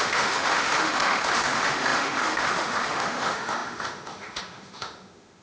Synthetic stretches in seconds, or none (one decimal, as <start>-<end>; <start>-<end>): 0.0-5.4